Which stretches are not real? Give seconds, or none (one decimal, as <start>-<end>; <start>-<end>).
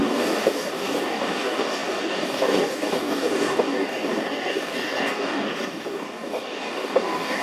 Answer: 0.0-7.4